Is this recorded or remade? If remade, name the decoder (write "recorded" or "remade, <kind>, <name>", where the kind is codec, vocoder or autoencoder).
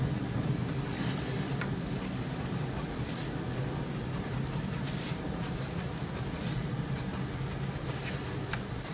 recorded